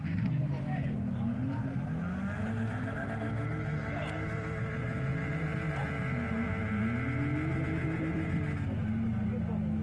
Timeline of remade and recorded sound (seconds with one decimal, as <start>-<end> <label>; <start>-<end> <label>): 0.0-9.8 recorded